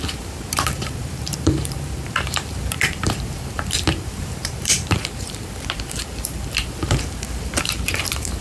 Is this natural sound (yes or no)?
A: no